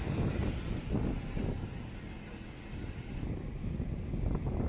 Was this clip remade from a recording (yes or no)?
no